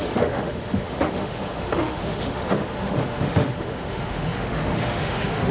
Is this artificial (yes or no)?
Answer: yes